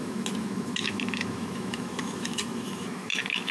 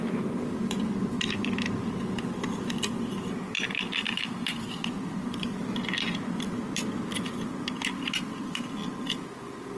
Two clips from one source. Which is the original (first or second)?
second